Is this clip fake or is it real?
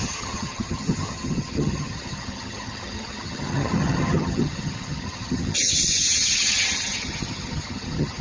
fake